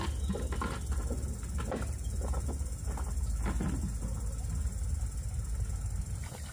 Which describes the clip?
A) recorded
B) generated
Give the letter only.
A